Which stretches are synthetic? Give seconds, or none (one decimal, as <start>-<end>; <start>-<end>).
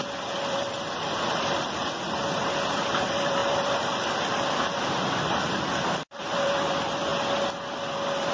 0.0-1.8; 3.0-7.1; 7.7-8.3